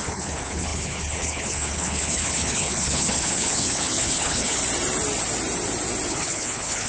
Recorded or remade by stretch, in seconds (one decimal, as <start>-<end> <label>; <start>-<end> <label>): 0.0-4.6 remade; 4.6-6.1 recorded; 6.1-6.9 remade